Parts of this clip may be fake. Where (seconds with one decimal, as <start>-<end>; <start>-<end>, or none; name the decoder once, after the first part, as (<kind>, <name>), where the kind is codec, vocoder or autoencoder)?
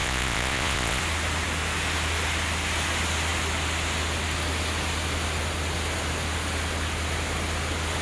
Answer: 0.0-1.0 (vocoder, Vocos)